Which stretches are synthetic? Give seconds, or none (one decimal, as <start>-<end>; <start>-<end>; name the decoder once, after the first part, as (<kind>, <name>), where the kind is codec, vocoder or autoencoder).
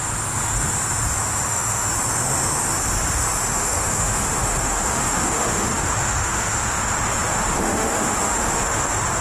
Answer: 1.2-1.9 (autoencoder, DAC-VAE); 3.5-6.8; 7.5-9.2